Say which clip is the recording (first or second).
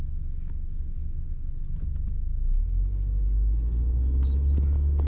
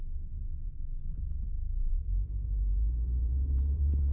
first